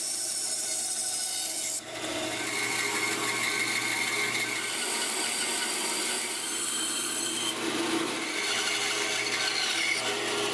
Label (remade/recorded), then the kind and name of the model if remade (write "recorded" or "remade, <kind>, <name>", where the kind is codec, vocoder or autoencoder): recorded